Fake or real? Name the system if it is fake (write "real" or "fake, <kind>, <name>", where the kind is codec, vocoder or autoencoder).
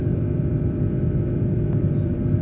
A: fake, vocoder, BigVGAN v2